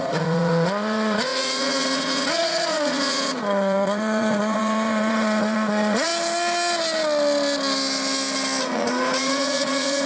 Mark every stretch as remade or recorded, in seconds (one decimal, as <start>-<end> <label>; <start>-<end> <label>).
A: 0.0-6.1 remade; 6.1-8.6 recorded; 8.6-10.1 remade